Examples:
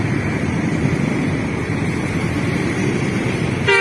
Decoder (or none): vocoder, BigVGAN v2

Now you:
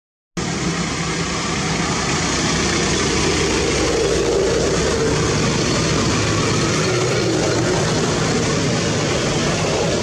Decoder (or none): none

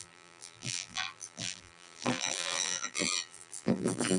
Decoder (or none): vocoder, BigVGAN v2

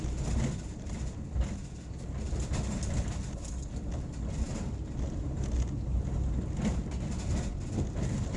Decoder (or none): none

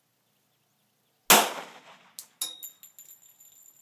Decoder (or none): none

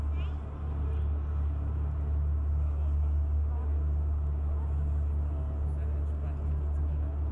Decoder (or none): none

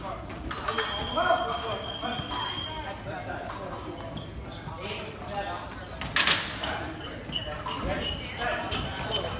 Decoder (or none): none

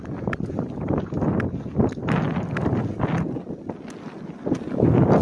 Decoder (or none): none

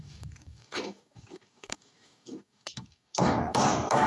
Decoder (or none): codec, DAC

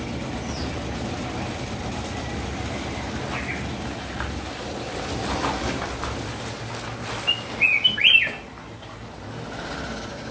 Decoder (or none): none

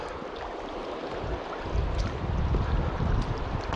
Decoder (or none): vocoder, BigVGAN v2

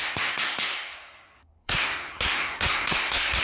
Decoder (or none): codec, SNAC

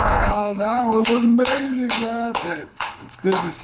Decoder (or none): codec, HILCodec